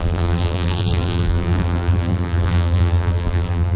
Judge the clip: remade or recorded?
remade